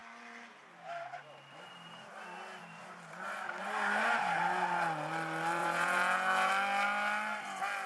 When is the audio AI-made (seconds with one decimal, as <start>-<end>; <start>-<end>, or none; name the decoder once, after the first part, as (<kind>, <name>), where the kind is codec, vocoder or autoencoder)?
5.6-6.5 (vocoder, Vocos)